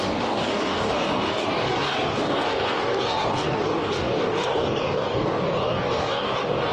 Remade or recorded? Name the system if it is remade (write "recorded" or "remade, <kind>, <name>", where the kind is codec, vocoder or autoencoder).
remade, codec, DAC